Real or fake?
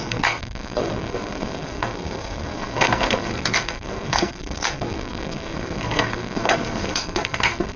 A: fake